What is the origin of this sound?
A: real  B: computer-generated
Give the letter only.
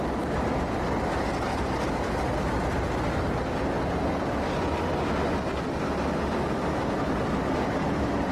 A